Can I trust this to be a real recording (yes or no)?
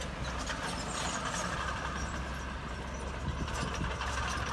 yes